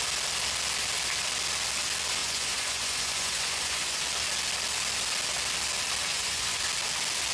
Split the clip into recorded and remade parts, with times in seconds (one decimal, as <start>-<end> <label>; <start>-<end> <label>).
0.0-2.2 recorded; 2.2-4.0 remade; 4.0-6.1 recorded; 6.1-6.6 remade; 6.6-7.3 recorded